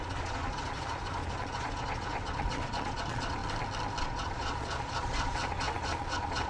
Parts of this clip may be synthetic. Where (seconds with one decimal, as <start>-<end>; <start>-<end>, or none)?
0.0-3.4; 4.0-6.5

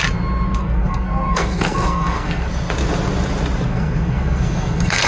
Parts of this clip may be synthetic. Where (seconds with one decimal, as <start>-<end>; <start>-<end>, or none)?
0.6-2.5; 3.7-5.1

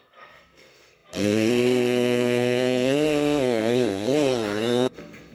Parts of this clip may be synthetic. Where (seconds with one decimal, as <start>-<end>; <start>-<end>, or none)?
0.0-5.3

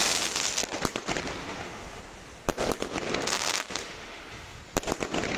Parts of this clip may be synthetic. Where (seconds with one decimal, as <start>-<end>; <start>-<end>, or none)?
1.4-2.0; 3.8-4.6

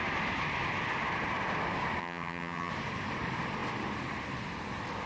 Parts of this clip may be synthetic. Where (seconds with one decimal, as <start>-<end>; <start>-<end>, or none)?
2.0-2.7